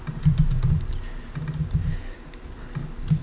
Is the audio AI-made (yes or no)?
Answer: no